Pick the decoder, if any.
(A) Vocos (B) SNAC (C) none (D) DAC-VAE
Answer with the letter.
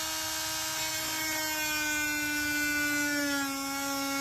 C